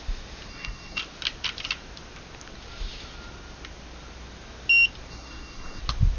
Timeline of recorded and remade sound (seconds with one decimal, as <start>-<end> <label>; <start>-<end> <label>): 0.0-0.5 recorded; 0.5-1.0 remade; 1.0-5.1 recorded; 5.1-5.8 remade; 5.8-6.2 recorded